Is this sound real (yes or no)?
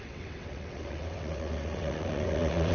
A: no